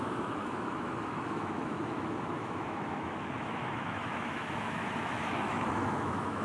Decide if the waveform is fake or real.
fake